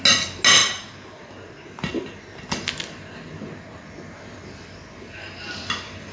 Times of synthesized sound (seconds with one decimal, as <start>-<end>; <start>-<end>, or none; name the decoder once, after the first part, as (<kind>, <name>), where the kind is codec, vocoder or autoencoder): none